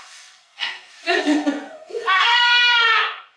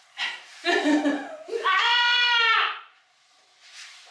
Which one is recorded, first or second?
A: second